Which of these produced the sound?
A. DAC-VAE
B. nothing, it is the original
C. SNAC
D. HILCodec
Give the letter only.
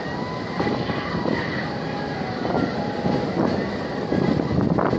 B